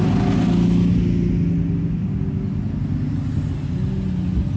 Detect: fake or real real